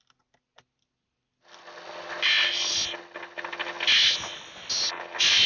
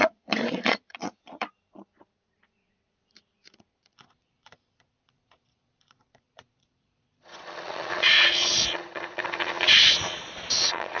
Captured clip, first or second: first